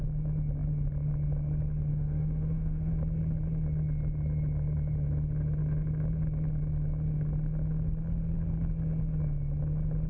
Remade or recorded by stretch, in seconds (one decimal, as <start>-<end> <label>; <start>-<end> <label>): 0.0-1.9 recorded; 1.9-2.9 remade; 2.9-10.1 recorded